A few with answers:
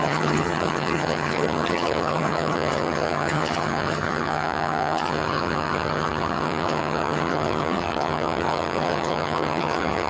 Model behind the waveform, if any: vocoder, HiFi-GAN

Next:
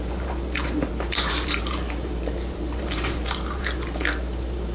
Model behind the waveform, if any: vocoder, BigVGAN v2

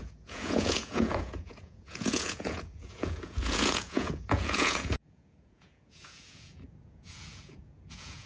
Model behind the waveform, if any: vocoder, Vocos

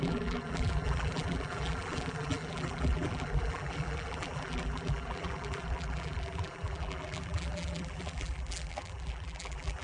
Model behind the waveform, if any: vocoder, BigVGAN v2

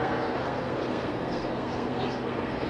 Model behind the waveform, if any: codec, SNAC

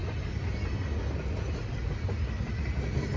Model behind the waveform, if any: none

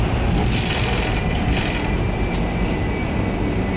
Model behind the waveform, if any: none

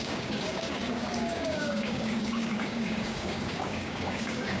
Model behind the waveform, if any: codec, DAC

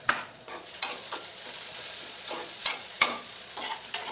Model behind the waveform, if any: vocoder, Vocos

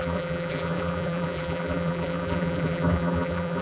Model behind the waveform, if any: vocoder, BigVGAN v2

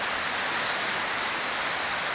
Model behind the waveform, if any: none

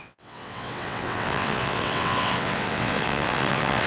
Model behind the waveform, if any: vocoder, WaveNeXt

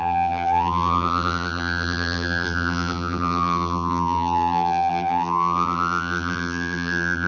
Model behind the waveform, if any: vocoder, BigVGAN v2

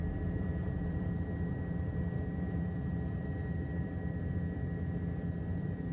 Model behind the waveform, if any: vocoder, BigVGAN v2